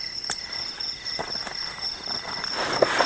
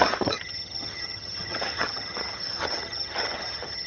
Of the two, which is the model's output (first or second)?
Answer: second